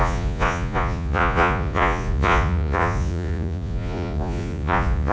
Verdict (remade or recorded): remade